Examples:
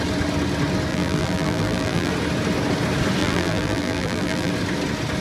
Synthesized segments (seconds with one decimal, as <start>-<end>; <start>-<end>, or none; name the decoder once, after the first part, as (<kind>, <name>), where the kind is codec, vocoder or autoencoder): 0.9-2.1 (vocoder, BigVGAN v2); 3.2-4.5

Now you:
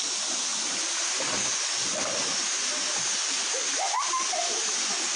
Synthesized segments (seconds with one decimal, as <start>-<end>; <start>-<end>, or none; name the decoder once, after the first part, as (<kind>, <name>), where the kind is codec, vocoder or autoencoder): none

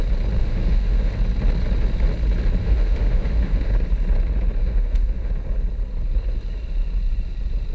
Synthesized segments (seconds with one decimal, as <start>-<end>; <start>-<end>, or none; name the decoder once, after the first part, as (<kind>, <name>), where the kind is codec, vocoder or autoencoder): 0.4-1.1 (autoencoder, DAC-VAE); 2.6-3.7; 4.6-5.3